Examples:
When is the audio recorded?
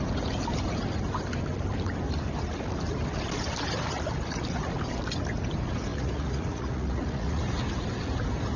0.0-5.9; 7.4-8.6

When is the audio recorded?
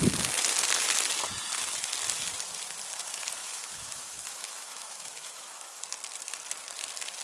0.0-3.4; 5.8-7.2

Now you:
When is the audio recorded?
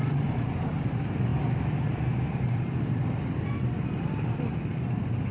0.0-5.3